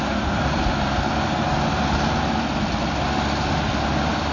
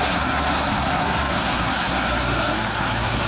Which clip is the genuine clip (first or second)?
first